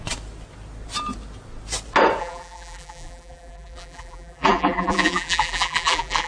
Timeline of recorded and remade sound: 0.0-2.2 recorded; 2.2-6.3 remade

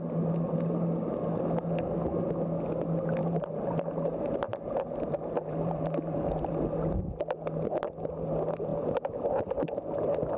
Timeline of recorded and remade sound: 0.0-3.2 recorded; 3.2-6.6 remade; 6.6-10.4 recorded

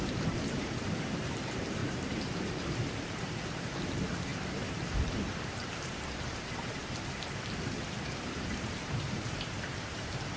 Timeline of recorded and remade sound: 0.0-10.4 remade

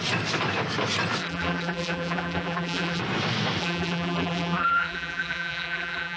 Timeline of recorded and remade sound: 0.0-1.2 recorded; 1.2-3.0 remade; 3.0-3.6 recorded; 3.6-6.2 remade

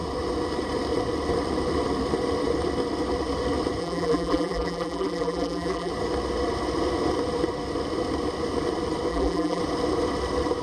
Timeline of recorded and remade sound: 0.0-3.8 recorded; 3.8-5.9 remade; 5.9-9.1 recorded; 9.1-9.6 remade; 9.6-10.6 recorded